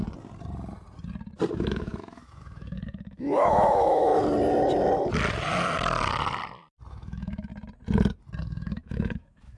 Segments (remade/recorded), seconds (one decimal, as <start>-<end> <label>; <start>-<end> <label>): 0.0-1.5 recorded; 1.5-4.1 remade; 4.1-6.9 recorded; 6.9-7.5 remade; 7.5-8.4 recorded; 8.4-9.6 remade